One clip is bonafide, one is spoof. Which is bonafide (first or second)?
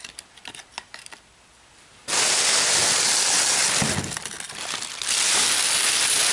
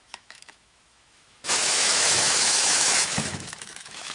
first